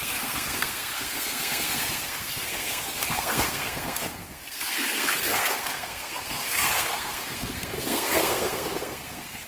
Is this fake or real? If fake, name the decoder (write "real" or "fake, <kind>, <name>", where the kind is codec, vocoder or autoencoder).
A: fake, codec, SNAC